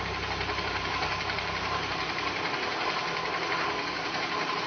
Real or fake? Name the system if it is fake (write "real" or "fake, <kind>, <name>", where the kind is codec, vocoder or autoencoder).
fake, vocoder, BigVGAN v2